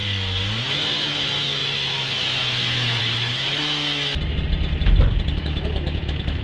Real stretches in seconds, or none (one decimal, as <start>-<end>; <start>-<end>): 0.0-0.6; 3.6-5.3